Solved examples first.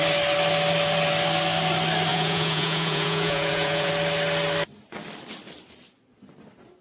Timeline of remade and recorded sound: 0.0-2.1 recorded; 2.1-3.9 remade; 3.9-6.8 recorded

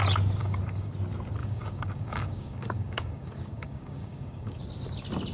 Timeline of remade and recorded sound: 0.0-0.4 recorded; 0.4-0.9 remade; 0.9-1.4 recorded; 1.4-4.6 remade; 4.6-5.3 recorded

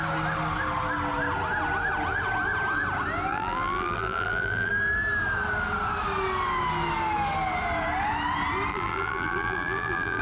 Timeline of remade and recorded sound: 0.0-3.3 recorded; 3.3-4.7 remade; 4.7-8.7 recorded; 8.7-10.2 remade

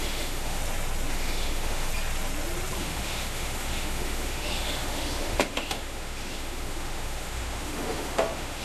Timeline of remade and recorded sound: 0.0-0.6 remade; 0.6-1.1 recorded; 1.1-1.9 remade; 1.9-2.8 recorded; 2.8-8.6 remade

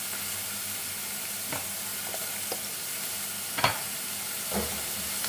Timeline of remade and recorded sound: 0.0-5.3 recorded

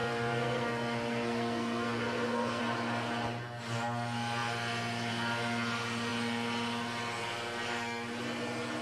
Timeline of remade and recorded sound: 0.0-2.6 remade; 2.6-8.8 recorded